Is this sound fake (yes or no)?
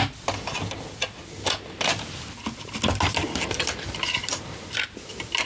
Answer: no